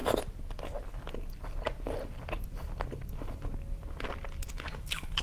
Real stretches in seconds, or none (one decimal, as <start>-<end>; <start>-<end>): 0.0-4.5